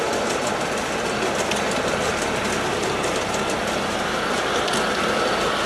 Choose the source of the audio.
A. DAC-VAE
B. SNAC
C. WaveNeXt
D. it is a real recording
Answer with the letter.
D